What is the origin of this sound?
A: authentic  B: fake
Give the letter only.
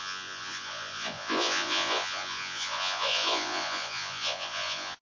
B